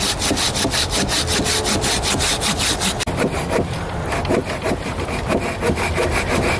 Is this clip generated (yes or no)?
no